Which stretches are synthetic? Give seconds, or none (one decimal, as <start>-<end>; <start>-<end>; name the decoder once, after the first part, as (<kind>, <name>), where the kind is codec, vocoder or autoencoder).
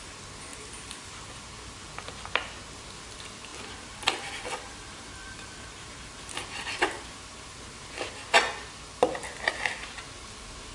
3.5-4.3 (vocoder, BigVGAN v2); 5.2-6.2